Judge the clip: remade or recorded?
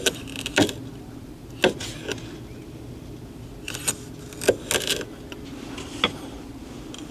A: recorded